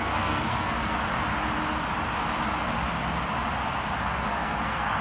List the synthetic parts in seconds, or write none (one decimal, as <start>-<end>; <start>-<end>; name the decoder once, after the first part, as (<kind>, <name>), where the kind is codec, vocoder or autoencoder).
0.0-1.0 (codec, SNAC); 4.0-5.0